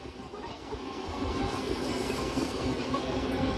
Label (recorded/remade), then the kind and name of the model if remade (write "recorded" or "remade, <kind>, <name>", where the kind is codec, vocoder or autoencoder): remade, codec, SNAC